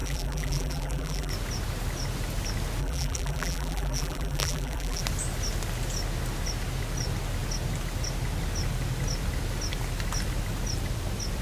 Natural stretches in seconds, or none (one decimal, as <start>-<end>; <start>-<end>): 1.3-2.8; 5.0-11.4